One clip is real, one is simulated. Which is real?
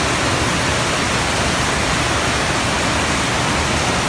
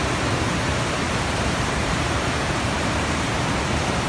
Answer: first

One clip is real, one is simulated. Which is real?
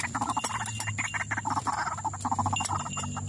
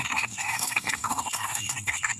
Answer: first